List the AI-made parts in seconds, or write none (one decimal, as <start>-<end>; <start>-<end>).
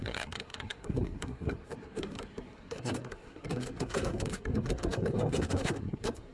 0.0-6.3